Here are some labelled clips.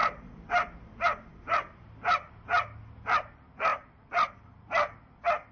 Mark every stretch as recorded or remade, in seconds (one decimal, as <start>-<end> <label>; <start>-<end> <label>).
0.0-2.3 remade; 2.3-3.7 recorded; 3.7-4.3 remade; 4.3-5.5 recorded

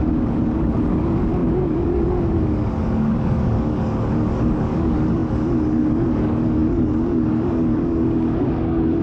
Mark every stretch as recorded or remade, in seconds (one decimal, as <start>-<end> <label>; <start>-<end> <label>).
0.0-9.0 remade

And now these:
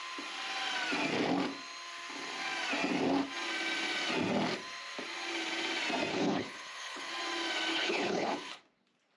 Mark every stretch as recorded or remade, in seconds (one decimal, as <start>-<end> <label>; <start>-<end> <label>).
0.0-6.1 recorded; 6.1-7.1 remade; 7.1-7.7 recorded; 7.7-8.6 remade; 8.6-9.2 recorded